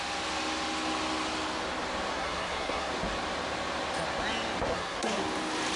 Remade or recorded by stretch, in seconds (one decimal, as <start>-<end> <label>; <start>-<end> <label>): 0.0-2.1 recorded; 2.1-2.9 remade; 2.9-4.7 recorded; 4.7-5.2 remade; 5.2-5.8 recorded